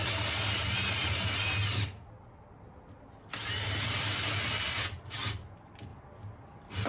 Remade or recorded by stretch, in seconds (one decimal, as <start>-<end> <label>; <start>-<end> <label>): 0.0-6.9 recorded